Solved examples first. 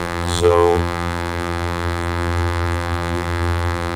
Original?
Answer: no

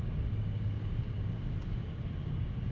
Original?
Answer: no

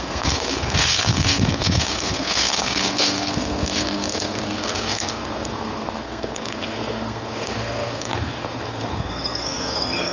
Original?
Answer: no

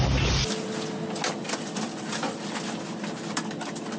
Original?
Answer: yes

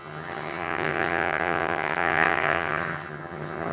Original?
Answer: no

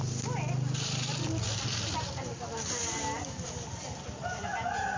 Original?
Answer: yes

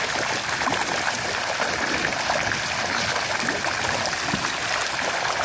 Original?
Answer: yes